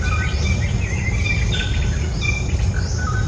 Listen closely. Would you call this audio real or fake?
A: real